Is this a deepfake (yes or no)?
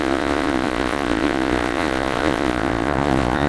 yes